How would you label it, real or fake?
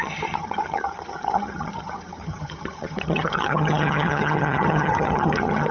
fake